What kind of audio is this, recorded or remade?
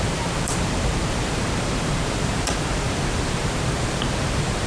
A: remade